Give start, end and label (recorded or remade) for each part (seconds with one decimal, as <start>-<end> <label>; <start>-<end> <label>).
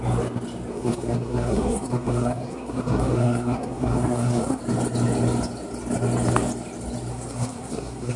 0.0-0.7 recorded; 0.7-4.6 remade; 4.6-7.1 recorded; 7.1-8.2 remade